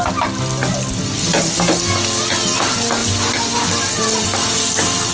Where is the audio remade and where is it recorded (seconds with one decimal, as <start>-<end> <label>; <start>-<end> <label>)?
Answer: 0.0-5.1 recorded